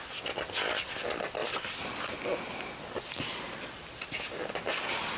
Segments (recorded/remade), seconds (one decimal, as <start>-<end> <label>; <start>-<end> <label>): 0.0-5.2 recorded